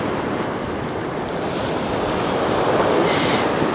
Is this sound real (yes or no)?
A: yes